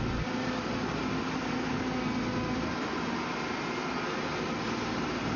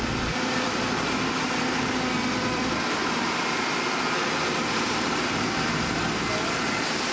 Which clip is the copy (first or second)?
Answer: second